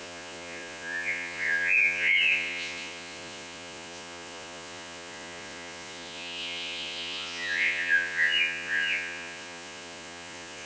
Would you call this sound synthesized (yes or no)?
yes